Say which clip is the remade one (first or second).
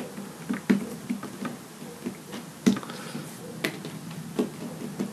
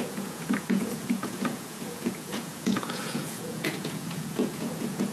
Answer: second